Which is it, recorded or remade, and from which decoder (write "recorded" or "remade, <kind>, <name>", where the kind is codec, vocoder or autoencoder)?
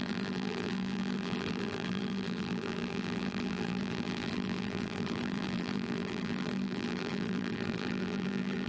remade, vocoder, BigVGAN v2